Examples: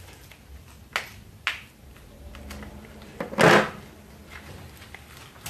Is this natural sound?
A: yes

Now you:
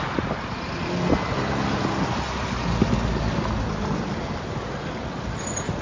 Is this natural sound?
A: yes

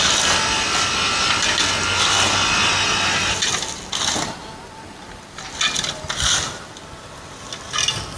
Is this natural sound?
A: yes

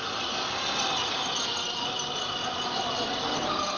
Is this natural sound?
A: yes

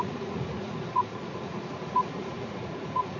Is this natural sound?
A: no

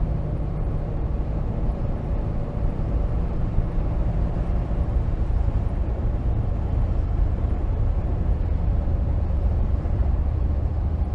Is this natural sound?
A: no